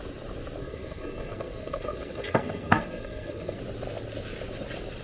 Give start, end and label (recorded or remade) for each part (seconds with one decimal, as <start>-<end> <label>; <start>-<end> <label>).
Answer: 0.0-0.6 recorded; 0.6-3.6 remade; 3.6-5.0 recorded